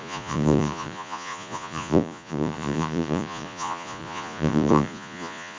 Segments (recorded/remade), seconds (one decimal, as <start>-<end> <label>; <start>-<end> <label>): 0.0-5.6 remade